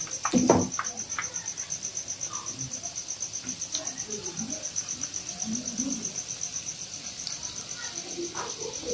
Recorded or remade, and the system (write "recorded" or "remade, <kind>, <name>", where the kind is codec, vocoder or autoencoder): recorded